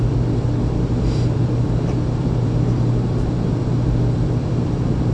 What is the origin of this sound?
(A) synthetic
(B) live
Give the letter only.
A